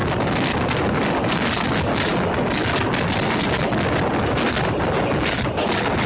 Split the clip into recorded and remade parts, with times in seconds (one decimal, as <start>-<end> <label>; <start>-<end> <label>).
0.0-6.1 recorded